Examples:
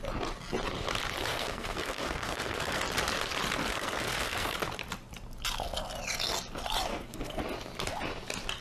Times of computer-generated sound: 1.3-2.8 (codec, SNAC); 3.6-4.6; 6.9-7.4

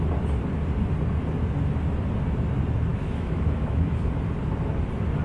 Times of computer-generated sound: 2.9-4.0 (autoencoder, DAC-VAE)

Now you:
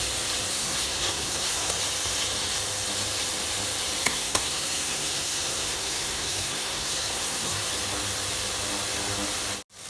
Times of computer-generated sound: 0.5-1.7 (codec, SNAC); 4.0-7.7

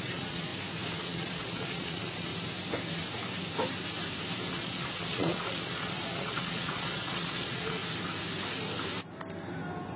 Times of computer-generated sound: 0.0-0.5 (vocoder, Vocos); 1.0-2.3; 4.5-7.8

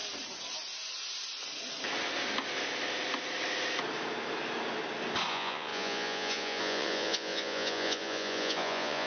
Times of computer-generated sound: 5.3-9.1 (vocoder, Vocos)

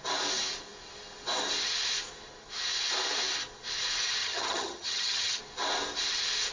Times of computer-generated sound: 4.2-5.4 (vocoder, HiFi-GAN)

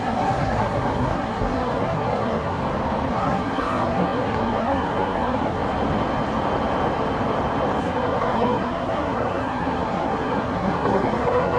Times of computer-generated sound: 0.0-2.6 (codec, SNAC); 3.1-5.6; 7.8-11.6